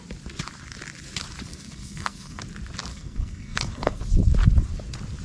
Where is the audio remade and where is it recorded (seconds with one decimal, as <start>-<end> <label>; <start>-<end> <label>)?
0.0-1.5 recorded; 1.5-2.4 remade; 2.4-2.9 recorded; 2.9-4.0 remade; 4.0-5.2 recorded